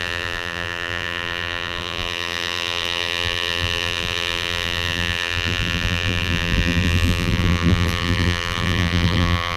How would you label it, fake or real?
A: fake